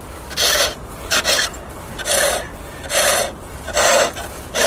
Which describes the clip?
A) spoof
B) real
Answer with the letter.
B